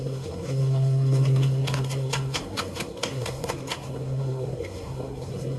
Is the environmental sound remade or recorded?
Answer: remade